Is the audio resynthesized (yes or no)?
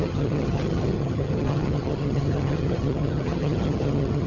yes